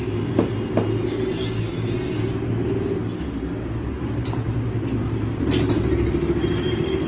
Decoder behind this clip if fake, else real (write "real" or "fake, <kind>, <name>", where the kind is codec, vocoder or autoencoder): real